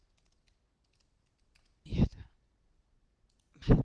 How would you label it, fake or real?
real